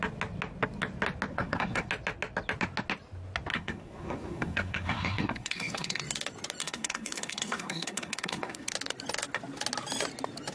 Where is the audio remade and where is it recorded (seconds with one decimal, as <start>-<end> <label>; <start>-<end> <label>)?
0.0-1.3 recorded; 1.3-1.9 remade; 1.9-3.5 recorded; 3.5-6.0 remade; 6.0-6.6 recorded; 6.6-8.7 remade; 8.7-10.5 recorded